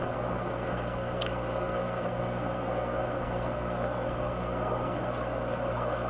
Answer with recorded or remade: remade